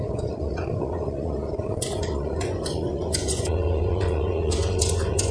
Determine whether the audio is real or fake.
fake